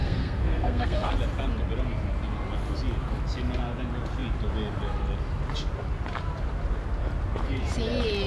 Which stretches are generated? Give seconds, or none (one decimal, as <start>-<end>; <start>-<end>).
0.0-1.1